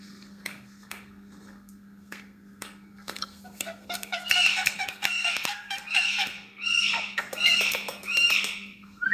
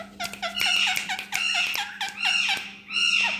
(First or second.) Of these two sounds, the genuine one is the second